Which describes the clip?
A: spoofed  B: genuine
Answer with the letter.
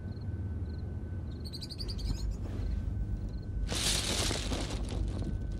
B